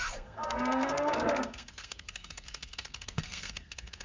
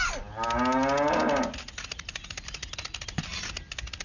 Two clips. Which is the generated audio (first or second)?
first